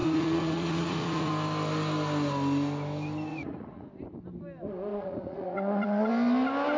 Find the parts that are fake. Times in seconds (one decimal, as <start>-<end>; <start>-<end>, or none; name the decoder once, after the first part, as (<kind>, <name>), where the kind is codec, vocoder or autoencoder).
0.0-1.3 (vocoder, Vocos); 3.3-3.9; 4.9-6.1